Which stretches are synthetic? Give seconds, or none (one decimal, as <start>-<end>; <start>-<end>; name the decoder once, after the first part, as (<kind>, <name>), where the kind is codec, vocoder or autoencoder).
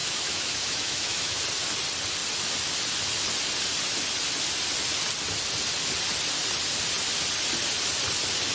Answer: 0.0-1.4 (autoencoder, DAC-VAE)